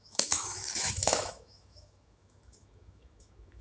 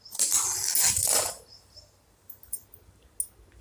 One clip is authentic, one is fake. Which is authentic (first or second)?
second